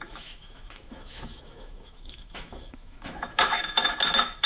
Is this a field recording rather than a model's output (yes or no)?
no